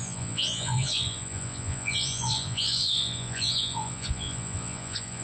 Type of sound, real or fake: fake